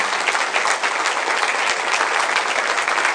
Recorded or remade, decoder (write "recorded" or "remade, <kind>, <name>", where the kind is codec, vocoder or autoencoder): recorded